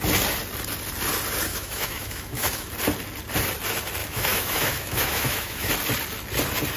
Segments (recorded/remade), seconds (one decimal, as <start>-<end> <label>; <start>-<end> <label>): 0.0-1.5 recorded; 1.5-2.7 remade; 2.7-4.0 recorded; 4.0-5.7 remade; 5.7-6.8 recorded